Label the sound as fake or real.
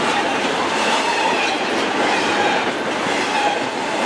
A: real